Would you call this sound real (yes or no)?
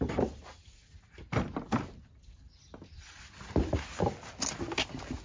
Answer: yes